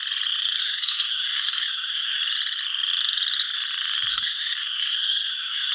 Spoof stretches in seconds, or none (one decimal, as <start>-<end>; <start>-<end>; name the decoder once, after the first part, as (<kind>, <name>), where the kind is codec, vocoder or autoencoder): 0.6-2.2 (codec, SNAC); 4.1-5.7

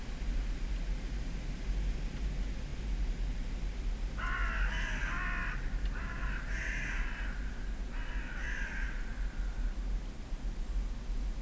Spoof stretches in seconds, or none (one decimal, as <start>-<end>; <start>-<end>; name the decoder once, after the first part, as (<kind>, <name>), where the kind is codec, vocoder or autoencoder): none

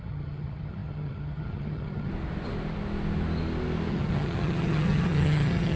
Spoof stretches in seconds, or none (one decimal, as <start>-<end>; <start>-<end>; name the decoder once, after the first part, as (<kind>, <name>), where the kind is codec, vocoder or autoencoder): 0.0-2.1 (vocoder, HiFi-GAN); 3.9-5.8